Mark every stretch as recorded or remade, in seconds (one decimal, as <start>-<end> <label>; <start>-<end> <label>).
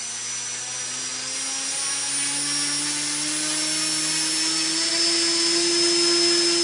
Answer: 0.0-6.6 recorded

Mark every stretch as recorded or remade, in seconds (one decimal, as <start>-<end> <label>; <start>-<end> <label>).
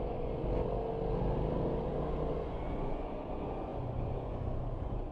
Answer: 0.0-0.4 remade; 0.4-2.3 recorded; 2.3-5.1 remade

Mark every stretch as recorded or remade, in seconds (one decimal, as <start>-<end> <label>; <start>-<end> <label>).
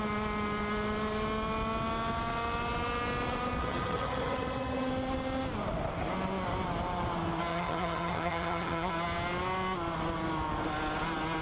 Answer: 0.0-3.6 recorded; 3.6-4.9 remade; 4.9-7.5 recorded; 7.5-8.9 remade; 8.9-11.4 recorded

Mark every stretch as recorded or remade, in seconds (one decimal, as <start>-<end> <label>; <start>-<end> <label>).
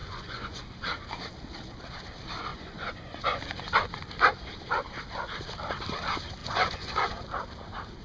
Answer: 0.0-0.6 remade; 0.6-2.5 recorded; 2.5-3.4 remade; 3.4-6.4 recorded; 6.4-7.1 remade; 7.1-8.0 recorded